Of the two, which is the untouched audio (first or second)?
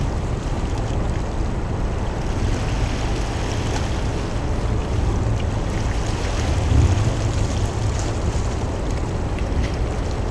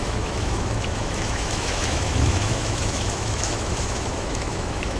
first